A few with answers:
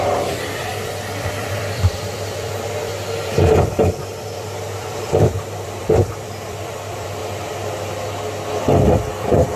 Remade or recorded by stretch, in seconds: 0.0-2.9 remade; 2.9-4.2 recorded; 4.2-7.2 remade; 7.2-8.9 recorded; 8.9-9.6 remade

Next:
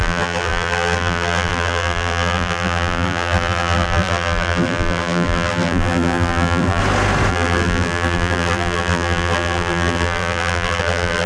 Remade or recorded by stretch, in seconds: 0.0-6.8 remade; 6.8-7.3 recorded; 7.3-11.3 remade

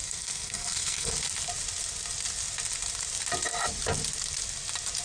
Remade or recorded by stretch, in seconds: 0.0-1.1 remade; 1.1-5.0 recorded

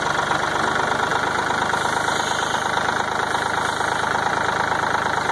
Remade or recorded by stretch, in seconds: 0.0-5.3 recorded

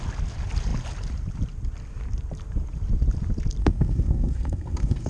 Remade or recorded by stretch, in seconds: 0.0-3.6 recorded; 3.6-5.1 remade